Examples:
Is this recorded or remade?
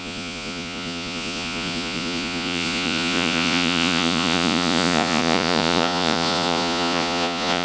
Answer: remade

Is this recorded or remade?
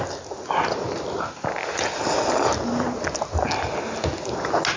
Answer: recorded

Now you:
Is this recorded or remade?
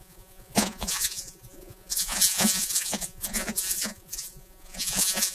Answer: remade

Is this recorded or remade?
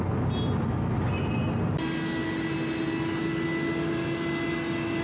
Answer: recorded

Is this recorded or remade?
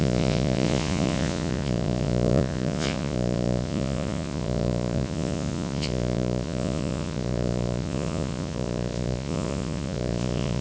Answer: remade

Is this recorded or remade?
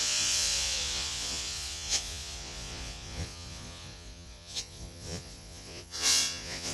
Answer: remade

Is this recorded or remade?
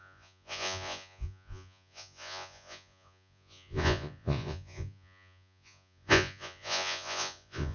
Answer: remade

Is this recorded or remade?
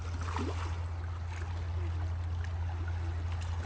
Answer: recorded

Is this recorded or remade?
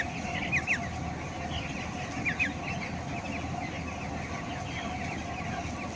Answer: recorded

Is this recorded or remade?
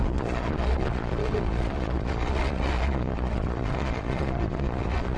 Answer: remade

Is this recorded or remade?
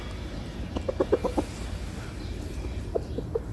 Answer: recorded